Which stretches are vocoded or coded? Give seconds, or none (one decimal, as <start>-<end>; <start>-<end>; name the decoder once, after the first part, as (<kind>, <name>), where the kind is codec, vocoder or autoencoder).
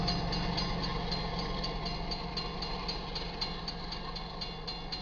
none